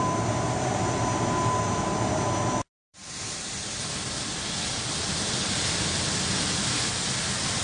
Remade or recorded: remade